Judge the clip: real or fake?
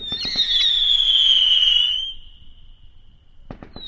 real